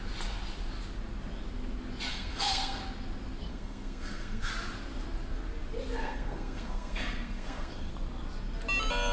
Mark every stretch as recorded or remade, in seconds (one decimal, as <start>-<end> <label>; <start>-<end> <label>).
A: 0.0-2.1 recorded; 2.1-2.8 remade; 2.8-3.5 recorded; 3.5-4.5 remade; 4.5-6.0 recorded; 6.0-7.9 remade; 7.9-9.1 recorded

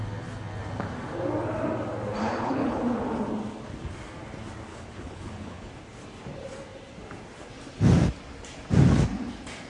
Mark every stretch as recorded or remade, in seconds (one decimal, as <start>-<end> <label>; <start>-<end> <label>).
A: 0.0-2.2 recorded; 2.2-2.8 remade; 2.8-4.7 recorded; 4.7-5.7 remade; 5.7-9.7 recorded

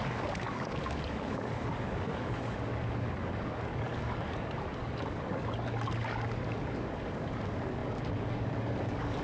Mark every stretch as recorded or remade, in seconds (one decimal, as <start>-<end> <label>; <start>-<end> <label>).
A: 0.0-9.2 remade

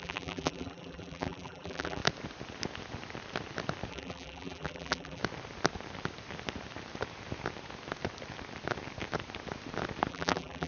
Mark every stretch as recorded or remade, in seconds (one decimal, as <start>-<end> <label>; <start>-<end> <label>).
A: 0.0-2.0 remade; 2.0-3.9 recorded; 3.9-5.2 remade; 5.2-10.1 recorded; 10.1-10.7 remade

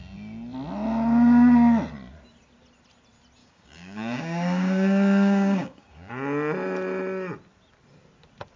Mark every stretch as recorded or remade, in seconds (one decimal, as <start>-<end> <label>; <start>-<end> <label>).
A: 0.0-3.4 recorded; 3.4-6.1 remade; 6.1-8.6 recorded

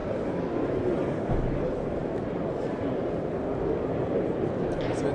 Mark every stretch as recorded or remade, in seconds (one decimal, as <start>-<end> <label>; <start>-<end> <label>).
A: 0.0-5.1 recorded